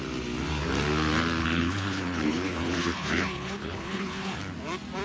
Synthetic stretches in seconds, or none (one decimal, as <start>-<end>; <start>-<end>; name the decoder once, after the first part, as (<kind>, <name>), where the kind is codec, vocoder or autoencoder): 1.4-4.4 (codec, HILCodec)